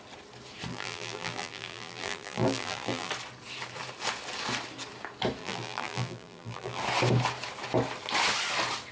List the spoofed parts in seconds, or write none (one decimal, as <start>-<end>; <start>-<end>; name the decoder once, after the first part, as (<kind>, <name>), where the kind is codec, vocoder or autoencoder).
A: 0.7-3.1 (vocoder, BigVGAN v2); 5.4-6.8